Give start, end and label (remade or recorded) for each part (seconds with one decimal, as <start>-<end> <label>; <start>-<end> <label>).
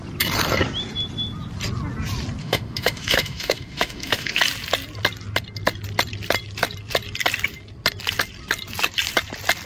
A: 0.0-2.4 recorded; 2.4-4.4 remade; 4.4-9.7 recorded